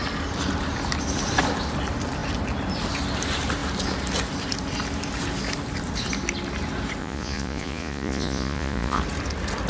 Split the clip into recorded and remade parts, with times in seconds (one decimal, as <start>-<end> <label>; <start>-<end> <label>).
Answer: 0.0-7.0 recorded; 7.0-9.0 remade; 9.0-9.7 recorded